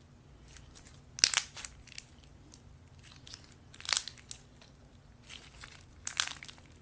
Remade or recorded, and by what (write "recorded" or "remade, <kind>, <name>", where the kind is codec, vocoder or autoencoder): recorded